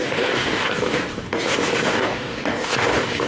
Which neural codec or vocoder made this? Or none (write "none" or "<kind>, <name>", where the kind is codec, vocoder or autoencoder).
codec, DAC